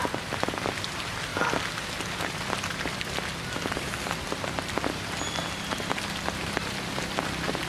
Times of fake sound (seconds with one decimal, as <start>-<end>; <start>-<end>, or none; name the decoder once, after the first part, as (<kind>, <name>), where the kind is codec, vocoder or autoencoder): none